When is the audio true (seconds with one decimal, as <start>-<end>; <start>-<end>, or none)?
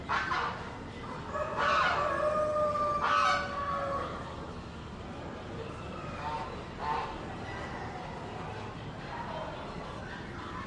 0.0-10.7